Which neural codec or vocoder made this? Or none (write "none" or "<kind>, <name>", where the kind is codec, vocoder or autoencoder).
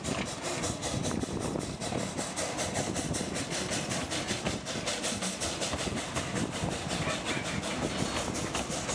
none